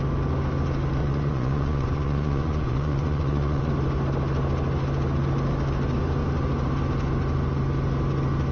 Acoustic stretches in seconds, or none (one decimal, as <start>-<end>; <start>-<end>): 0.0-1.0; 3.7-8.5